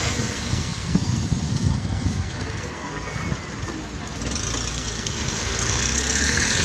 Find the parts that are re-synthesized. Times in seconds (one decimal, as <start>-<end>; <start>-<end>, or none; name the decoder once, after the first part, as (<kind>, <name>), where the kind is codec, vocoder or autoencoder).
0.0-3.2 (codec, SNAC); 4.7-6.6